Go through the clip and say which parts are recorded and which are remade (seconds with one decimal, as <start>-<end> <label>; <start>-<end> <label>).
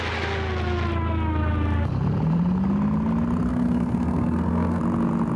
0.0-3.5 recorded; 3.5-4.8 remade; 4.8-5.4 recorded